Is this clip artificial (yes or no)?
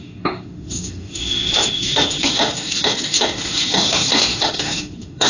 yes